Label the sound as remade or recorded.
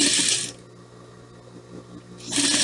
recorded